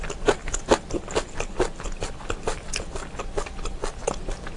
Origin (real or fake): real